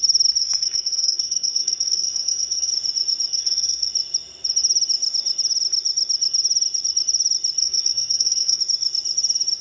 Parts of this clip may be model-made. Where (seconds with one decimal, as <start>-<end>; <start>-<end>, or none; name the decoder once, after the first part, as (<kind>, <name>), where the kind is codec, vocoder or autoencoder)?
0.4-2.7 (codec, SNAC); 3.3-3.9; 7.6-8.6